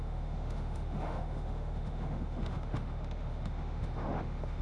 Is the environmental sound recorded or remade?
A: remade